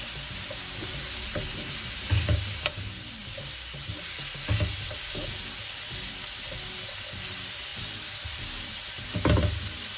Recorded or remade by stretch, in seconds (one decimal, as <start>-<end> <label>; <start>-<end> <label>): 0.0-10.0 recorded